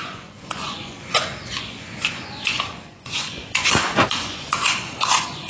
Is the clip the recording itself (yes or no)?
no